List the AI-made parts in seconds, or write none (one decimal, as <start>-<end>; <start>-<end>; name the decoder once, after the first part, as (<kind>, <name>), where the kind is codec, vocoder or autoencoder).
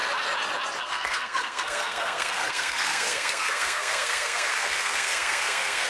0.8-5.9 (codec, SNAC)